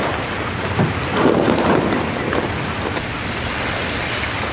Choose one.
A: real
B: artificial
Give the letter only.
A